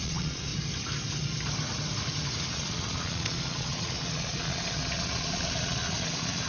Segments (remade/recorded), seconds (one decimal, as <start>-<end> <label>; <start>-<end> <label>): 0.0-0.5 remade; 0.5-2.5 recorded; 2.5-6.5 remade